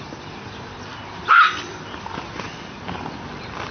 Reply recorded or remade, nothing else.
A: recorded